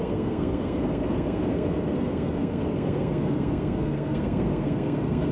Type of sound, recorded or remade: remade